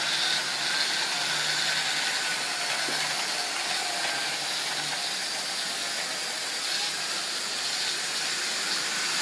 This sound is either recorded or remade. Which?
recorded